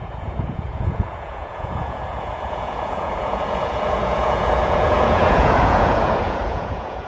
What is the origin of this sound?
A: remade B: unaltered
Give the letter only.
A